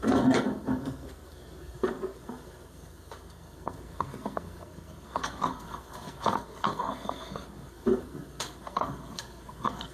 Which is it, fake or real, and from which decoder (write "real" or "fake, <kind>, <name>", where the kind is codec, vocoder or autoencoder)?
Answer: fake, codec, SNAC